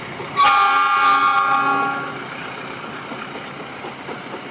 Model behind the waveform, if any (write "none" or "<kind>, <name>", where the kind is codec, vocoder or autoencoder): none